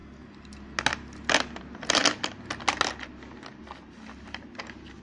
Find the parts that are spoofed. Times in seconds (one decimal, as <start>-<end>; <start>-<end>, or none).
none